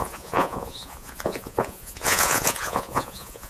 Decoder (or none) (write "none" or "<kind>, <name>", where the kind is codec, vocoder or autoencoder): vocoder, Vocos